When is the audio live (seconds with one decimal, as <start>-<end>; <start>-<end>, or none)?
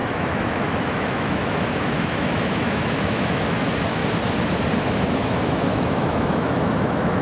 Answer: 4.0-4.8